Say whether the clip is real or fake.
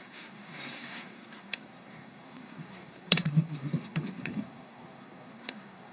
fake